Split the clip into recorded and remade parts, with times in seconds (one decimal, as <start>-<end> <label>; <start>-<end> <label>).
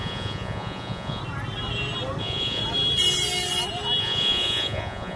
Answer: 0.0-1.2 remade; 1.2-2.2 recorded; 2.2-2.6 remade; 2.6-4.0 recorded; 4.0-5.2 remade